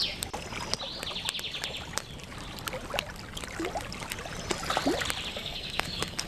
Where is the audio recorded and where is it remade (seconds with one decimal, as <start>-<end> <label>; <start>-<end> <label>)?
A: 0.0-5.3 recorded; 5.3-6.3 remade